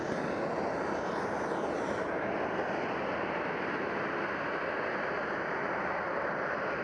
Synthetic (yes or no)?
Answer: no